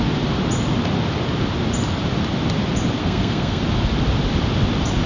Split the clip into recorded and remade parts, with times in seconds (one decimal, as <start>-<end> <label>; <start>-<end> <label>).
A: 0.0-3.0 recorded; 3.0-3.6 remade; 3.6-5.1 recorded